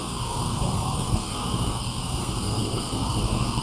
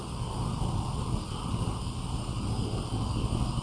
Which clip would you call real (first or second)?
second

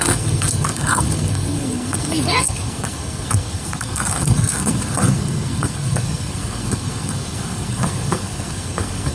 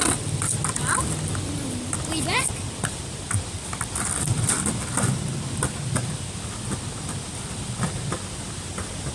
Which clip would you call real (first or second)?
second